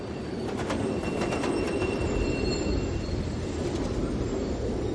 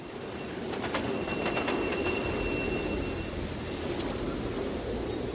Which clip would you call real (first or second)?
second